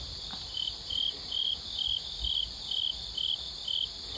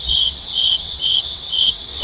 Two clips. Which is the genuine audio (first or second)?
first